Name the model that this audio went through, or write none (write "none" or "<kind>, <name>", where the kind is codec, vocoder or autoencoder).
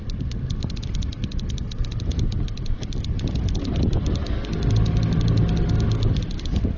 none